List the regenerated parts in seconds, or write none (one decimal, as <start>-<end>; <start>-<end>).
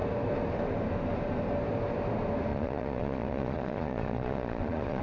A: 2.5-5.0